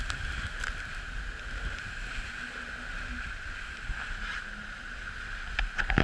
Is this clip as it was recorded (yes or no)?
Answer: yes